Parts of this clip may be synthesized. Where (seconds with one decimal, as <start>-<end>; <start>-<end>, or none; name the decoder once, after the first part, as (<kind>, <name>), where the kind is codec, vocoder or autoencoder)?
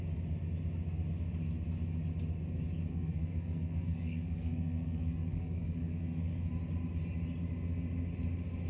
2.9-6.5 (codec, SNAC)